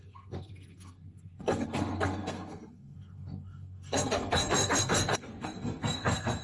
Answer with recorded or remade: remade